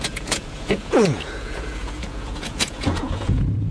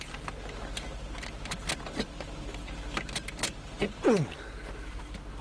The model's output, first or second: first